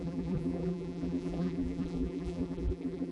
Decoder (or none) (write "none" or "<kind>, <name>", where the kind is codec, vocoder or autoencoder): vocoder, BigVGAN v2